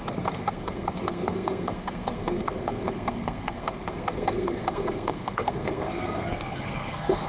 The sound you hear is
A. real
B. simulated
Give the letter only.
B